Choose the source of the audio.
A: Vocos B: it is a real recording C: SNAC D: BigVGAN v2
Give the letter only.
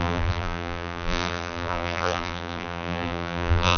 D